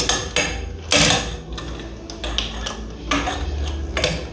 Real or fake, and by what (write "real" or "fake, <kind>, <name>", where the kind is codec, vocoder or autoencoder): real